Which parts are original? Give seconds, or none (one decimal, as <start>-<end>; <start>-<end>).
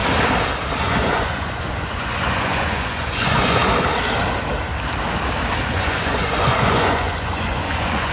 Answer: 0.0-0.8; 3.6-5.7